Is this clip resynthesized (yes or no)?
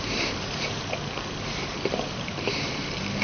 no